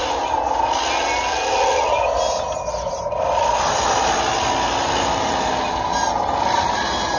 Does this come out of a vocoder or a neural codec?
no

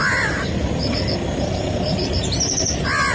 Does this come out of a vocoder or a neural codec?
no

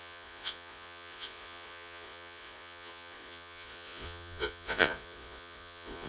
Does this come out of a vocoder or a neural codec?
yes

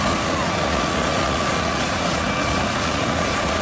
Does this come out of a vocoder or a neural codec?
yes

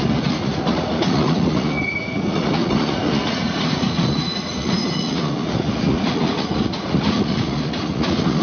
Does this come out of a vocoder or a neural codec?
yes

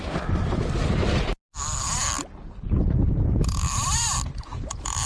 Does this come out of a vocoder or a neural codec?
no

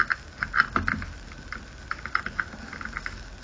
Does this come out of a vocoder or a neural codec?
no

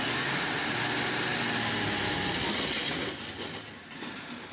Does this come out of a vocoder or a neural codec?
no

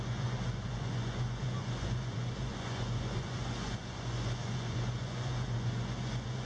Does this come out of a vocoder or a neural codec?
yes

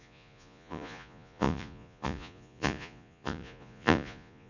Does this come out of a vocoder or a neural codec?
yes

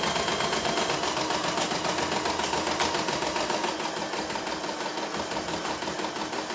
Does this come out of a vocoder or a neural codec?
no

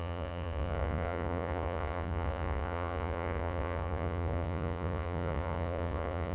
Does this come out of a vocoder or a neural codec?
yes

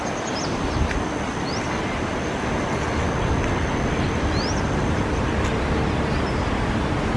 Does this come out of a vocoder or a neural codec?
no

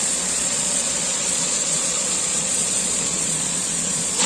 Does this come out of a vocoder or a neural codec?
yes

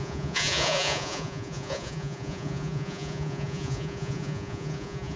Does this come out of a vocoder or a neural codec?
yes